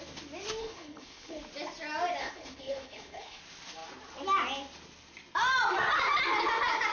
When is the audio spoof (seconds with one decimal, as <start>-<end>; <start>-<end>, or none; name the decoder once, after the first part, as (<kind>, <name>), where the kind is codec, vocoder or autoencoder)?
0.6-1.4 (codec, HILCodec); 2.2-3.4